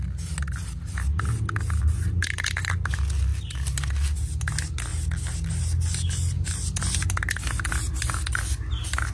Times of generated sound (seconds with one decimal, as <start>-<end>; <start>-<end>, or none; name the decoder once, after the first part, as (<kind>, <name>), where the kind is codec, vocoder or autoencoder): none